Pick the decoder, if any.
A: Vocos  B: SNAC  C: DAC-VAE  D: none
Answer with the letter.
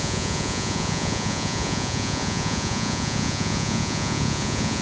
A